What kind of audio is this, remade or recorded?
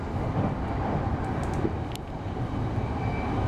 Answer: recorded